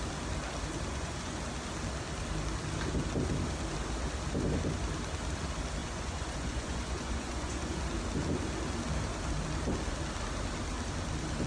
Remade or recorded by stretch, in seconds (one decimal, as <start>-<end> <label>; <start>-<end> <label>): 0.0-0.9 recorded; 0.9-1.4 remade; 1.4-5.8 recorded; 5.8-7.8 remade; 7.8-11.5 recorded